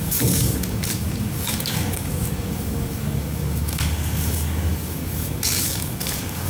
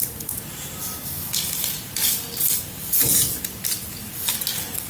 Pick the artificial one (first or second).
first